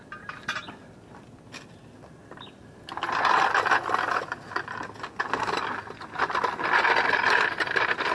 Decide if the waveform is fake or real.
real